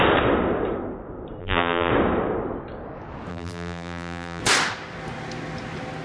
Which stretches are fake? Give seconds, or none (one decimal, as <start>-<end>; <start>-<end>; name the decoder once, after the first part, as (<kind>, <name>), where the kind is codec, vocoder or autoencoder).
1.4-1.9 (vocoder, BigVGAN v2); 3.3-4.4